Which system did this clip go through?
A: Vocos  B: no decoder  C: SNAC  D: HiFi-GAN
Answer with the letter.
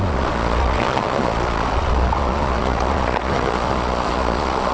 A